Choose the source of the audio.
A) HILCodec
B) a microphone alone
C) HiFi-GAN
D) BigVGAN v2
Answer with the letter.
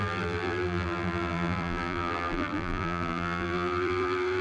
D